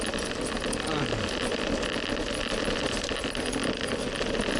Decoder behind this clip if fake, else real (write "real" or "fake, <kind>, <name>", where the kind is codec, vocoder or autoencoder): real